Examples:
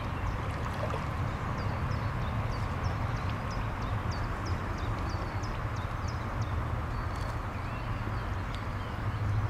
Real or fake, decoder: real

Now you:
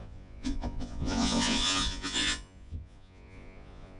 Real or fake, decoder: fake, vocoder, Vocos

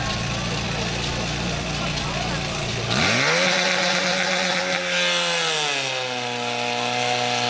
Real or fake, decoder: real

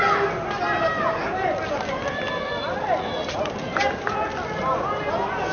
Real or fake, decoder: real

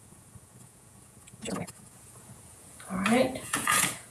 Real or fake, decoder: fake, vocoder, Vocos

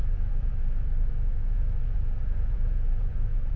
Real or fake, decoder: fake, vocoder, Vocos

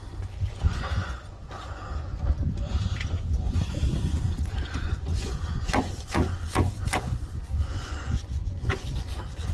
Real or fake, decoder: fake, vocoder, Vocos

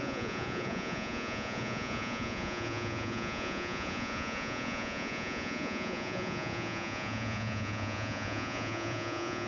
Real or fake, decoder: fake, vocoder, Vocos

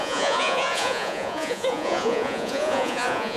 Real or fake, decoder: fake, vocoder, Vocos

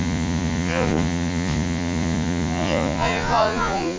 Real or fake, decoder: fake, vocoder, Vocos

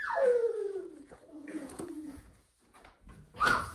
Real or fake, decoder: fake, vocoder, Vocos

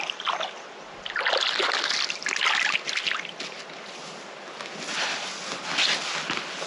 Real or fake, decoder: real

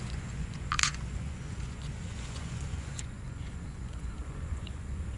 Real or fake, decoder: fake, vocoder, Vocos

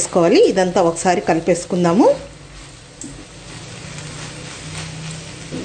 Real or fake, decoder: real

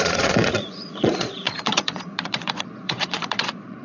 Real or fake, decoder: fake, vocoder, Vocos